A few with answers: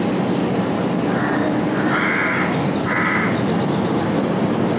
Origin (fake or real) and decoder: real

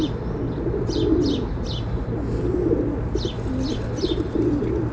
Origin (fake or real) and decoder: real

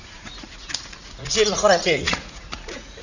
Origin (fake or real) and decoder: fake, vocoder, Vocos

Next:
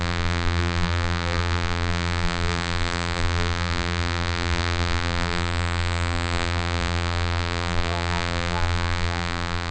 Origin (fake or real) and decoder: fake, vocoder, BigVGAN v2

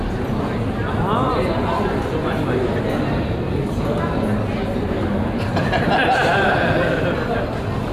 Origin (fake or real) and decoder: real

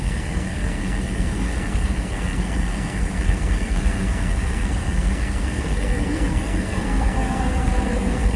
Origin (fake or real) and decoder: fake, codec, SNAC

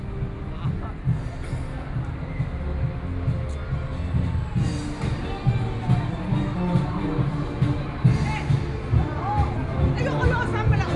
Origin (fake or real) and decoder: real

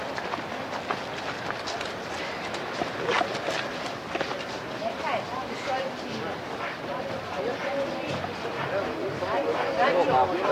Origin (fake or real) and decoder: real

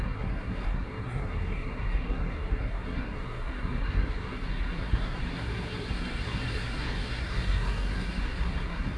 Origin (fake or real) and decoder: fake, codec, SNAC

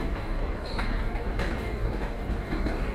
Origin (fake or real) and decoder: fake, codec, DAC